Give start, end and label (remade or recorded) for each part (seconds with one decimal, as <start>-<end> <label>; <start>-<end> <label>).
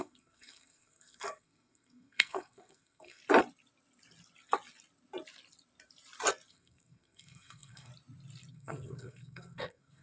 0.0-3.2 remade; 3.2-6.5 recorded; 6.5-7.9 remade; 7.9-8.5 recorded; 8.5-10.0 remade